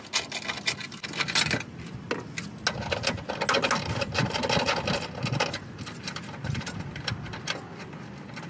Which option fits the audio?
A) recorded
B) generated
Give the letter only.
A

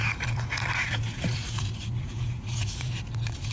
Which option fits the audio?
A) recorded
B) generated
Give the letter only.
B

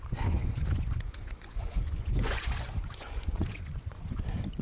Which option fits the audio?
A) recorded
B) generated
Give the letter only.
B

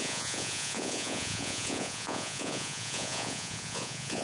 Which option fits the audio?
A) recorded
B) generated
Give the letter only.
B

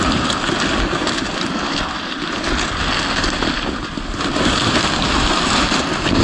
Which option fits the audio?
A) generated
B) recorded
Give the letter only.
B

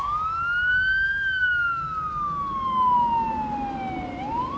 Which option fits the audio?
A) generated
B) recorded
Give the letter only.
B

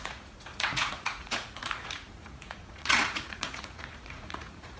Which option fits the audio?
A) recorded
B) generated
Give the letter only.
B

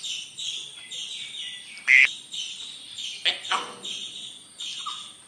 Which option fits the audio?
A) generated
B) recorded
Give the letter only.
B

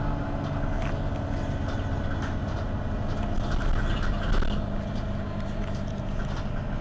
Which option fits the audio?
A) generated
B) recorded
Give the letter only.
B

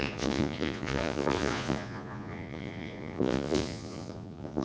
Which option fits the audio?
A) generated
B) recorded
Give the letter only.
A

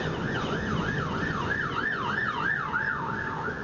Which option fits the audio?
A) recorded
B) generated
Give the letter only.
B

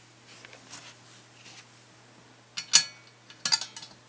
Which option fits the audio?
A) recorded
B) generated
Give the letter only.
A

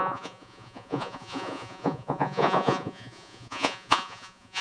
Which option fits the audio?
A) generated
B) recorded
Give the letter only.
A